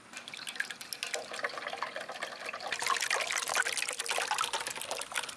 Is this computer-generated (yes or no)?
no